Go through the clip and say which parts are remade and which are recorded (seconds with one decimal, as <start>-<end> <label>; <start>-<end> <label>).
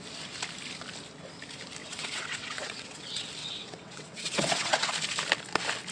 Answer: 0.0-1.8 recorded; 1.8-3.0 remade; 3.0-3.4 recorded; 3.4-4.9 remade; 4.9-5.9 recorded